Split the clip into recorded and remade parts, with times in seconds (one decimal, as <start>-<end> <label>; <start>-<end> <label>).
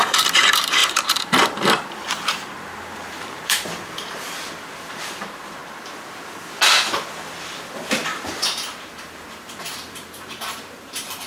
0.0-5.6 remade; 5.6-7.4 recorded; 7.4-11.3 remade